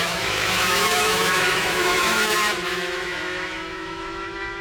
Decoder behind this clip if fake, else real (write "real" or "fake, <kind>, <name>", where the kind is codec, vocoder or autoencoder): fake, autoencoder, DAC-VAE